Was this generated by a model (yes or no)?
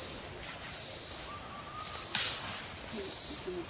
no